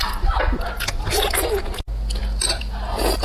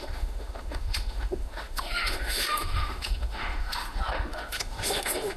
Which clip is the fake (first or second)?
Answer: second